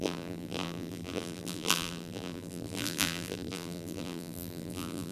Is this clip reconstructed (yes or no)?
yes